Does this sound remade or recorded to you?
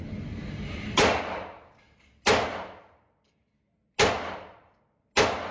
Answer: recorded